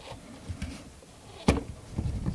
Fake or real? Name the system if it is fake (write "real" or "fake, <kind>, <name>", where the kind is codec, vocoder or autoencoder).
real